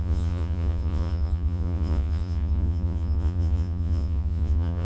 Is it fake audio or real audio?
fake